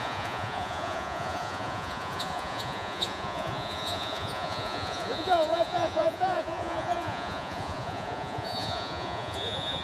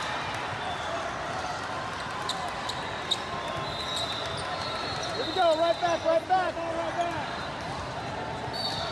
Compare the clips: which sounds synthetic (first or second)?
first